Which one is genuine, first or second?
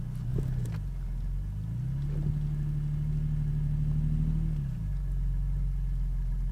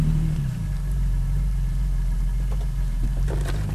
first